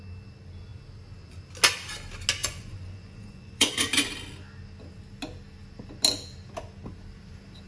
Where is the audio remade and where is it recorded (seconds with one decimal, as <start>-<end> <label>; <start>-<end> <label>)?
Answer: 0.0-2.4 recorded; 2.4-3.7 remade; 3.7-7.7 recorded